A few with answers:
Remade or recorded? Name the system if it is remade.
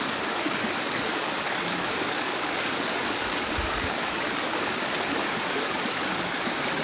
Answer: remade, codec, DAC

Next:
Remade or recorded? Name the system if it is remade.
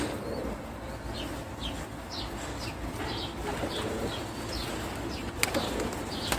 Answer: recorded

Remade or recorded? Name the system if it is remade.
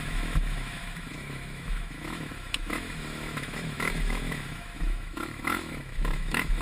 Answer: remade, autoencoder, DAC-VAE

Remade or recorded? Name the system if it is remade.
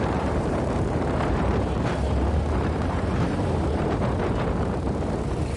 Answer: remade, vocoder, BigVGAN v2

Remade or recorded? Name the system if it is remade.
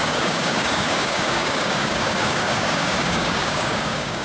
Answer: remade, codec, DAC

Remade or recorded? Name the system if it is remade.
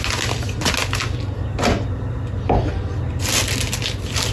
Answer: recorded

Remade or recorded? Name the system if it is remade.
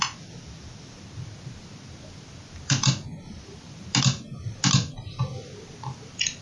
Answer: recorded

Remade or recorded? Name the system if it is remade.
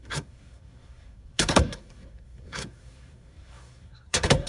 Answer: remade, codec, SNAC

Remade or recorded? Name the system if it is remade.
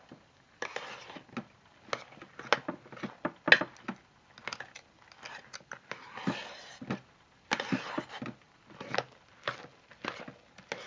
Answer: recorded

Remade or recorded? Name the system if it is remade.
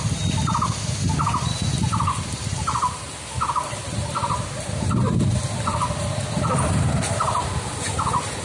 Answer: recorded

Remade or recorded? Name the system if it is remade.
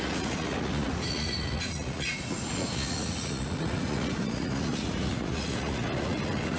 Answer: remade, vocoder, Vocos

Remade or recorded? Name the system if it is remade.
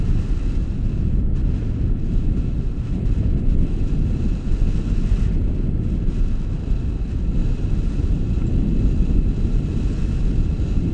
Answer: recorded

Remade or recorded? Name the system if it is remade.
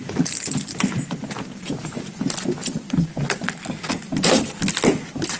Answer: recorded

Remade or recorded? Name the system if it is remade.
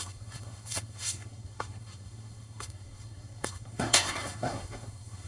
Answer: remade, codec, SNAC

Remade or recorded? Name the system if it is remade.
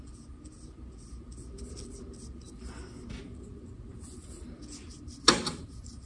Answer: recorded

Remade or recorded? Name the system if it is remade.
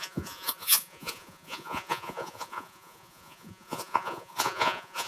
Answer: remade, vocoder, Vocos